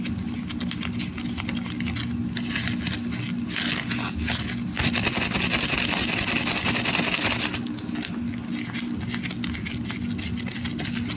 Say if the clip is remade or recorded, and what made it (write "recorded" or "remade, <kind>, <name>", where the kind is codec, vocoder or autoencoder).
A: recorded